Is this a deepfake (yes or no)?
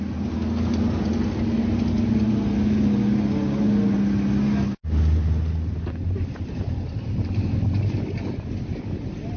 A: no